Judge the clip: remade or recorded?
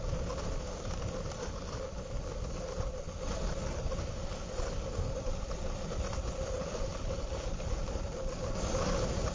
recorded